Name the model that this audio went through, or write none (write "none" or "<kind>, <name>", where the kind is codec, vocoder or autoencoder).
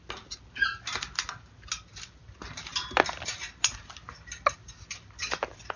none